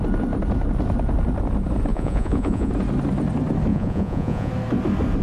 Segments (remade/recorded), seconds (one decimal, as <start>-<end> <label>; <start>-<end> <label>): 0.0-1.9 recorded; 1.9-2.7 remade; 2.7-3.7 recorded; 3.7-4.5 remade; 4.5-5.2 recorded